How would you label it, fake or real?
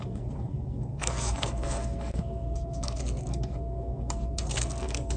fake